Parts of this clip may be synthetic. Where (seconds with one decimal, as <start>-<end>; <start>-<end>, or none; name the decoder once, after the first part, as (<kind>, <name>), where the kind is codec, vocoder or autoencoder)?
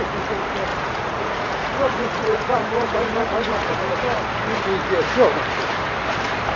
0.7-4.0 (vocoder, Vocos)